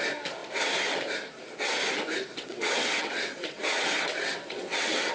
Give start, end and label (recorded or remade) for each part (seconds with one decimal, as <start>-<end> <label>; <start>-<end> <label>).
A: 0.0-2.3 recorded; 2.3-5.1 remade